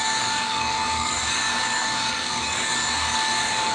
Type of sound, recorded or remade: remade